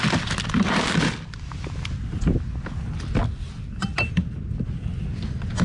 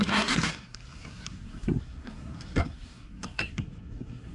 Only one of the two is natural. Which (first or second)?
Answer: first